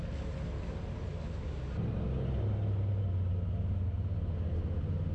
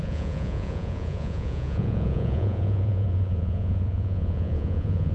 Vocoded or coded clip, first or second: second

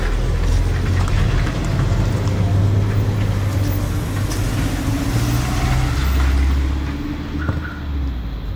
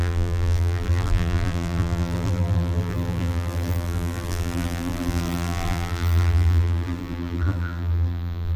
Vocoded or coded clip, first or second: second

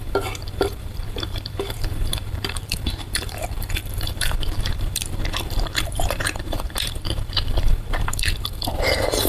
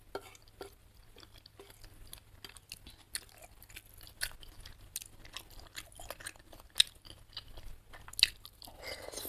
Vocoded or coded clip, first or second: first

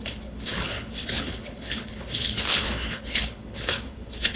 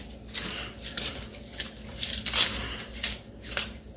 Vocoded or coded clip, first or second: first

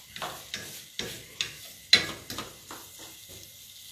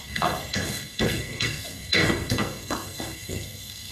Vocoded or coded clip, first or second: second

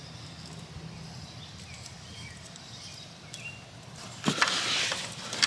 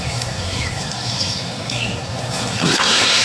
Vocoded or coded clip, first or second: second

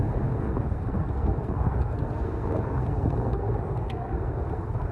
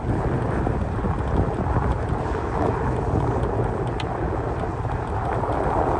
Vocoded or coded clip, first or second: first